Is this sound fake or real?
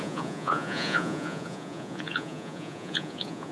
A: fake